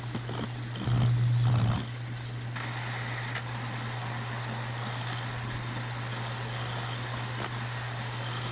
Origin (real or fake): real